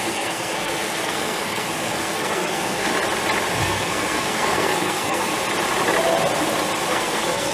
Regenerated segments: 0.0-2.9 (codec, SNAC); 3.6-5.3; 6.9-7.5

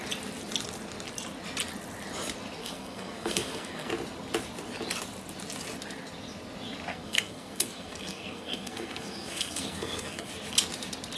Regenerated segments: 2.6-3.9 (codec, SNAC); 6.9-10.3

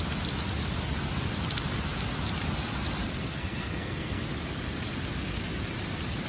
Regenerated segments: 3.2-4.2 (codec, SNAC)

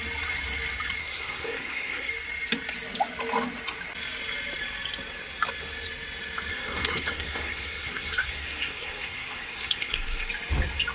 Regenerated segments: 1.0-2.1 (codec, SNAC); 6.5-10.3